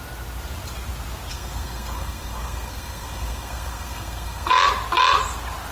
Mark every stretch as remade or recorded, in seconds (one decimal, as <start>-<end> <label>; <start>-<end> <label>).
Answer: 0.0-1.3 recorded; 1.3-4.5 remade; 4.5-5.7 recorded

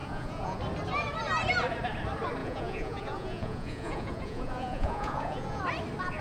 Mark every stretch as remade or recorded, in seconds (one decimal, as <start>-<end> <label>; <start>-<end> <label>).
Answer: 0.0-0.6 remade; 0.6-2.4 recorded; 2.4-5.6 remade; 5.6-6.2 recorded

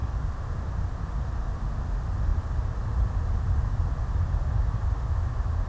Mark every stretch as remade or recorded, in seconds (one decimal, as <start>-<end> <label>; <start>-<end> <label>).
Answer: 0.0-5.7 recorded

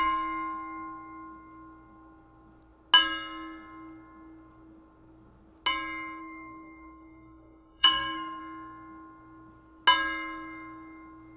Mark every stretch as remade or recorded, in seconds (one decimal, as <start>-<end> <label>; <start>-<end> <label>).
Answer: 0.0-6.2 recorded; 6.2-8.4 remade; 8.4-11.4 recorded